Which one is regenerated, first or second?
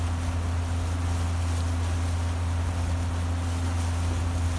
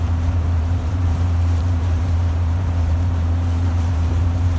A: second